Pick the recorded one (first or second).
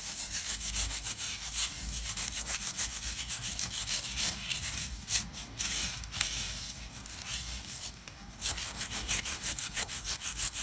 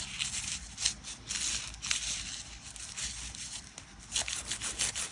second